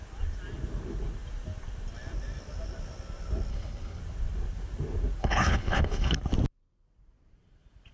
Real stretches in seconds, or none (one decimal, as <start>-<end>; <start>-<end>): 0.0-3.5; 4.0-5.2; 6.2-7.9